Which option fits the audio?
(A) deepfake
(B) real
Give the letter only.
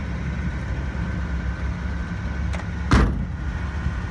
B